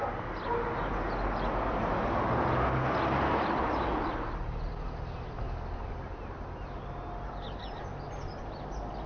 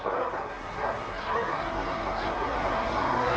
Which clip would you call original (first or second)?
first